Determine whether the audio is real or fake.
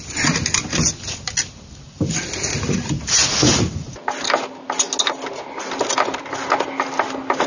real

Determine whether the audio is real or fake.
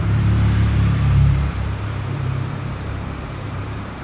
fake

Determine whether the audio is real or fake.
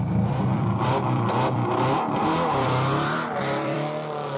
fake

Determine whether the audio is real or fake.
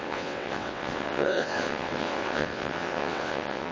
fake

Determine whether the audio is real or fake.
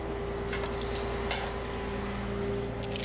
real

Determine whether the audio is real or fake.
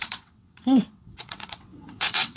fake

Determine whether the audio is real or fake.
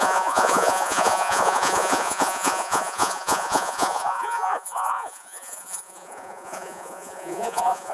fake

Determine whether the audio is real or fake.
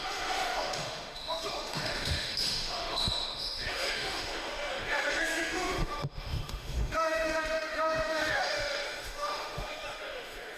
fake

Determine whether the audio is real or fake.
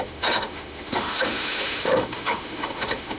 fake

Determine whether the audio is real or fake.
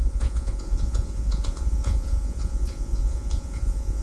fake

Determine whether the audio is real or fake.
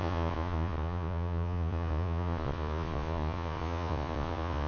fake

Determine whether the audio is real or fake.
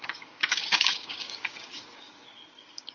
fake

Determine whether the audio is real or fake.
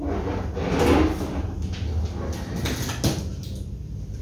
real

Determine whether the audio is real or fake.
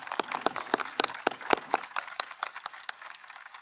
fake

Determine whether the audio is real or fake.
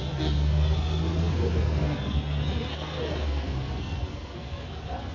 fake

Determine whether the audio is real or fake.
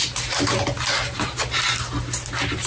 real